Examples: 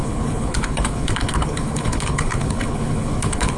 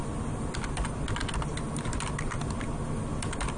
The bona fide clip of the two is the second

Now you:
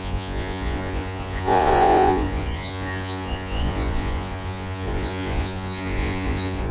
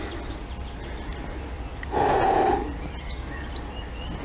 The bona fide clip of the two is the second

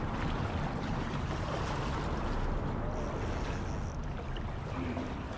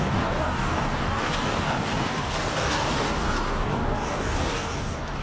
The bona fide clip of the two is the first